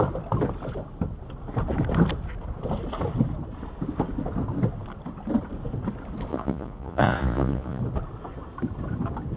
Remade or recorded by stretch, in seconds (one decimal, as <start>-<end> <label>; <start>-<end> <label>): 0.0-6.3 recorded; 6.3-7.8 remade; 7.8-9.4 recorded

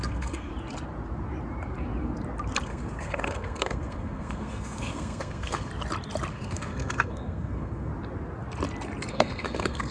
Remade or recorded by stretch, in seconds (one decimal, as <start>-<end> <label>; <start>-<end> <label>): 0.0-0.5 remade; 0.5-2.6 recorded; 2.6-5.7 remade; 5.7-6.3 recorded; 6.3-7.9 remade; 7.9-9.1 recorded; 9.1-9.9 remade

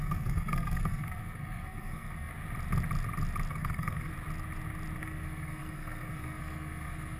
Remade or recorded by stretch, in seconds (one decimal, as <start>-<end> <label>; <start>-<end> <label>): 0.0-2.3 remade; 2.3-3.5 recorded; 3.5-4.1 remade; 4.1-5.0 recorded; 5.0-7.2 remade

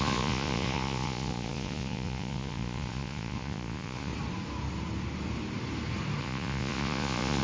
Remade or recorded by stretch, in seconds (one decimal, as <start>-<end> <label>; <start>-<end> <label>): 0.0-4.1 remade; 4.1-6.2 recorded; 6.2-7.4 remade

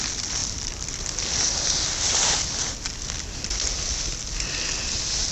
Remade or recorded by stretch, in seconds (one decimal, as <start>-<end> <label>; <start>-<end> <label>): 0.0-5.3 recorded